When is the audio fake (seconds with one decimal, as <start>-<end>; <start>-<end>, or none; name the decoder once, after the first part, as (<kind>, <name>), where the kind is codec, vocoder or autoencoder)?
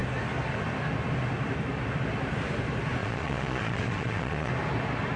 3.0-4.5 (vocoder, Vocos)